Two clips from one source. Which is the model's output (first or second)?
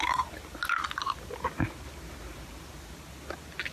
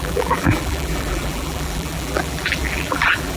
second